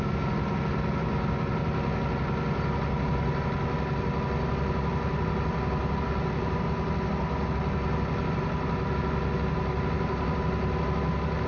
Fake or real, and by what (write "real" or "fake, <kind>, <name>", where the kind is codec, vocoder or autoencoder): real